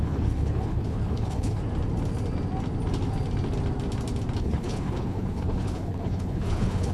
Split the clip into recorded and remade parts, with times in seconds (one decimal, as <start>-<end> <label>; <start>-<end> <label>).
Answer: 0.0-1.6 remade; 1.6-4.4 recorded; 4.4-6.9 remade